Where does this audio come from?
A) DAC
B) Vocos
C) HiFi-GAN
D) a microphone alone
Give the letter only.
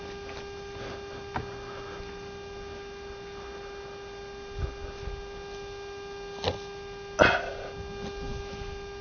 D